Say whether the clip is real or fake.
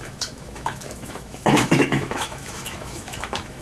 fake